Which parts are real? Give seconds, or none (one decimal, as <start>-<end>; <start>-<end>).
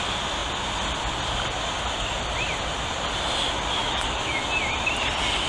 0.0-3.8; 4.4-5.5